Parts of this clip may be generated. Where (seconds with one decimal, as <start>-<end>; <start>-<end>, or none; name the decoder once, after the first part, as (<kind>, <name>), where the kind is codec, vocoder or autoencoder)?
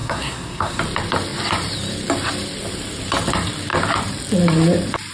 0.0-0.8 (codec, SNAC)